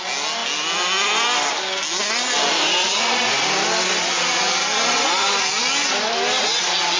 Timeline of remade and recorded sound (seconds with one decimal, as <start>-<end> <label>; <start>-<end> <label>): 0.0-7.0 recorded